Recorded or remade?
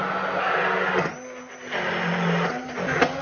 recorded